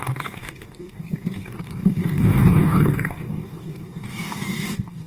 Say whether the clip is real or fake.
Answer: fake